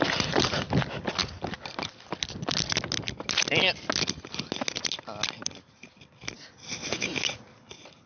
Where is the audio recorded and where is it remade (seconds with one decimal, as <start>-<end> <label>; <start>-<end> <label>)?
0.0-8.1 recorded